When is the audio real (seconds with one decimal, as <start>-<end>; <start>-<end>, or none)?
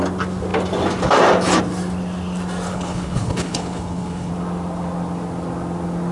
0.0-2.7; 4.3-6.1